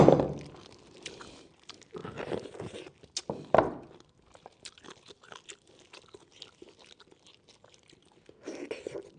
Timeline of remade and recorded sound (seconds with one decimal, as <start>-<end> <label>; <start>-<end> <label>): 0.0-9.2 recorded